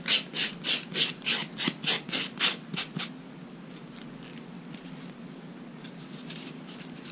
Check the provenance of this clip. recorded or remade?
recorded